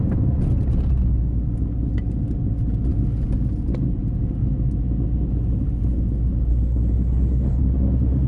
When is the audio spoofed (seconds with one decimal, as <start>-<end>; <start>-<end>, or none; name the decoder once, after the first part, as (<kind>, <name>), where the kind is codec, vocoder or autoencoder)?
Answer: 6.5-7.6 (codec, HILCodec)